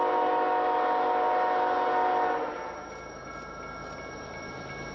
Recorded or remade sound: recorded